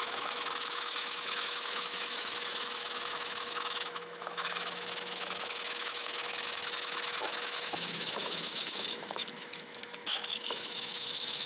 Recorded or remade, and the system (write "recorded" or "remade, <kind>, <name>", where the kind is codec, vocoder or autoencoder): remade, autoencoder, DAC-VAE